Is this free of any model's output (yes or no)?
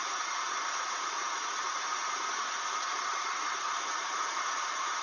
no